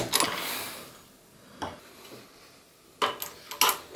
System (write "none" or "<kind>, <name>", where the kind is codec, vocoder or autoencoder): none